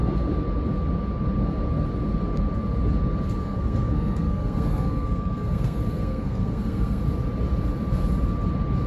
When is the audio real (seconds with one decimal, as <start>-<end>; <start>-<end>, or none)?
0.0-3.4; 7.0-8.9